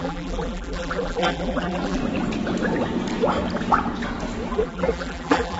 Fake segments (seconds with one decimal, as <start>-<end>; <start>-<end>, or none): 0.0-2.0; 4.5-5.6